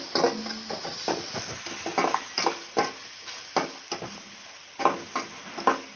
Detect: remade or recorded recorded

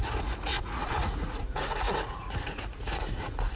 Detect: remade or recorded remade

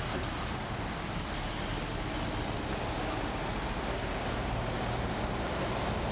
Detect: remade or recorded recorded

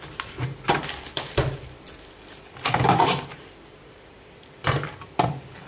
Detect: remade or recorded remade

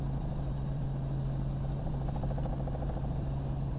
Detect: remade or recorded remade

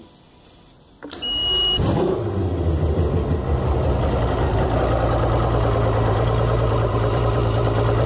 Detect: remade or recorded recorded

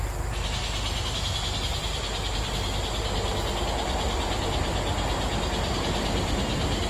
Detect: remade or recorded recorded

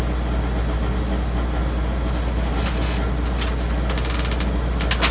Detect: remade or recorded recorded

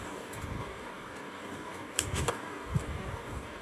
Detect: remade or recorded remade